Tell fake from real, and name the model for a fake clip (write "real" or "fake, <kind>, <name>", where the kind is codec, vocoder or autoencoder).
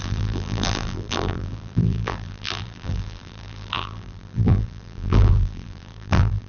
fake, vocoder, BigVGAN v2